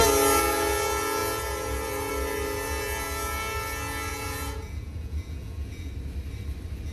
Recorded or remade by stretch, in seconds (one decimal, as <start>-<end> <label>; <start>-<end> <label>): 0.0-4.1 recorded; 4.1-5.9 remade; 5.9-6.9 recorded